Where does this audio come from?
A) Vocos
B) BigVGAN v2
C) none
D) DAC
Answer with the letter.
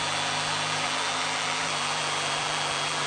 B